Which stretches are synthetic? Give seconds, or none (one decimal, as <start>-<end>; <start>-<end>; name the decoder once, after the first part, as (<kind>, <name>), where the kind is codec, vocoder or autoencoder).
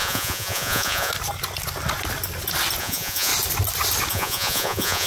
0.0-1.1 (vocoder, Vocos); 2.8-3.3; 4.1-5.1